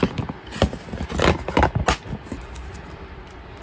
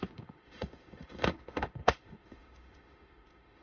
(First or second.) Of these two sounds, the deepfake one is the second